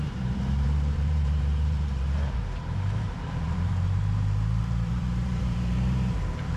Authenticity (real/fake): fake